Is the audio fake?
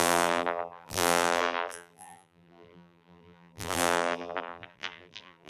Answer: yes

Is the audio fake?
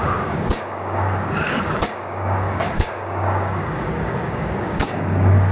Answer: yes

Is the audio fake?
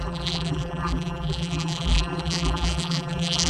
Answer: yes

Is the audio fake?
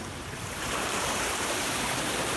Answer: yes